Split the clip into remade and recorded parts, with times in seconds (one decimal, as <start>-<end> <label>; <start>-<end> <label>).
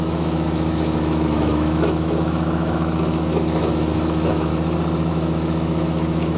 0.0-4.5 remade; 4.5-5.1 recorded; 5.1-6.4 remade